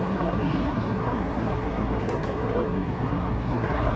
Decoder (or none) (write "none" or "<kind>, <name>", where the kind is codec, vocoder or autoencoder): codec, SNAC